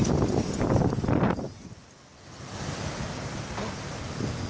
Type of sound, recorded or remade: recorded